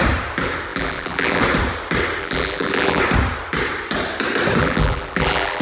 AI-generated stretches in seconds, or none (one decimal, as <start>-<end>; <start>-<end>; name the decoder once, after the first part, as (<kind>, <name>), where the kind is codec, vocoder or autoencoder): 0.7-1.4 (vocoder, BigVGAN v2); 2.2-3.0; 4.6-5.6